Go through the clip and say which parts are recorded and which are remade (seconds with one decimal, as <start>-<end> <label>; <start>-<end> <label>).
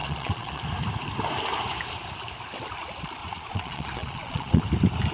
0.0-0.6 remade; 0.6-3.2 recorded; 3.2-4.6 remade; 4.6-5.1 recorded